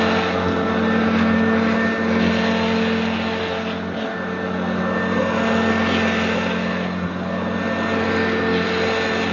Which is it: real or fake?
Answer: real